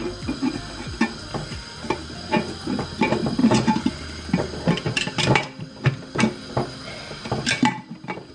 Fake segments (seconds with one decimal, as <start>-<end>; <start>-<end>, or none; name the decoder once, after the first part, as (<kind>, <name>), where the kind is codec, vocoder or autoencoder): 3.4-4.0 (vocoder, Vocos)